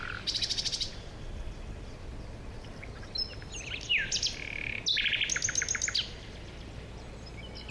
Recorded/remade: recorded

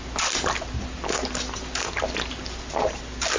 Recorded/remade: recorded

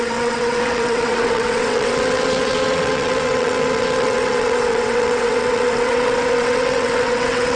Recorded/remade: remade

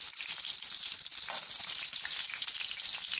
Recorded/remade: recorded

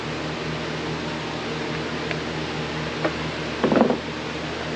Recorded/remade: recorded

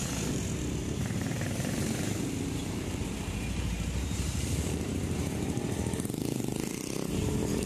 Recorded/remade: remade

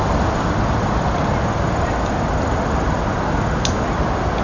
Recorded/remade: recorded